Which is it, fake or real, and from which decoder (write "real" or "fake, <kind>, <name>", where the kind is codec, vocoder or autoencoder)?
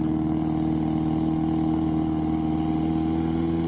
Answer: real